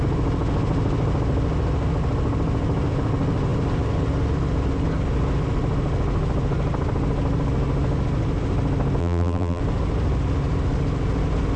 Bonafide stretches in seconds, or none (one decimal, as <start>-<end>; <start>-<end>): 0.0-9.0; 9.6-11.6